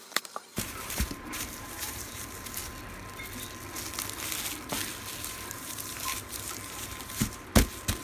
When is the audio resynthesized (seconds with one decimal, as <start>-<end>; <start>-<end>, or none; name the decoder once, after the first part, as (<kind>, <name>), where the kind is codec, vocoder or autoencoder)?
0.0-2.6 (vocoder, BigVGAN v2); 5.2-7.5